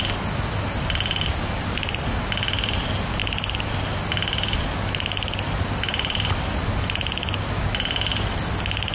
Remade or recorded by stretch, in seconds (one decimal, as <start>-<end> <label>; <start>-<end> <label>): 0.0-8.9 recorded